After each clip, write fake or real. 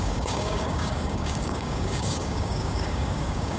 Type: fake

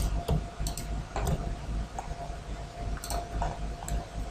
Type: real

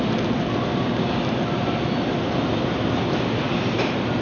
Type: real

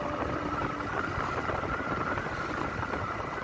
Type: real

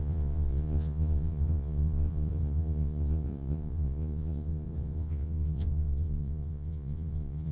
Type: fake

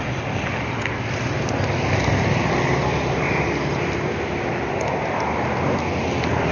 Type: real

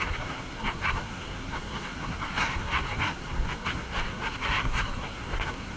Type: fake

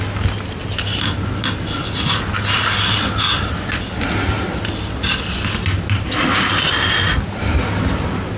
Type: real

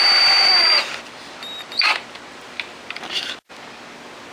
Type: fake